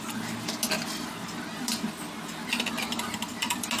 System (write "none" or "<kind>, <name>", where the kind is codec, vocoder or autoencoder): none